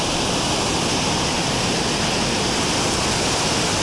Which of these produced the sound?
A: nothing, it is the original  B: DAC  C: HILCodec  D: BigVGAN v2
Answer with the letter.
A